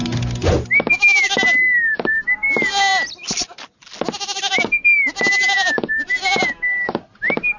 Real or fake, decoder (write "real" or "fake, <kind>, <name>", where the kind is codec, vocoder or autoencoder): real